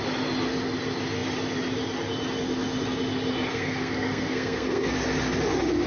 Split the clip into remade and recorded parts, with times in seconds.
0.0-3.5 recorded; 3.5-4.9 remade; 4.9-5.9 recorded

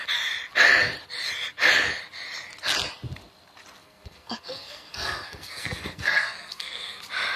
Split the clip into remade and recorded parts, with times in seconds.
0.0-3.8 recorded; 3.8-7.0 remade; 7.0-7.4 recorded